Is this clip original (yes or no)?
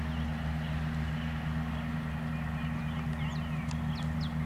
yes